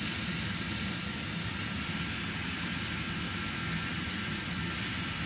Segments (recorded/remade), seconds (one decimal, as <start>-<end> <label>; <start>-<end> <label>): 0.0-5.3 recorded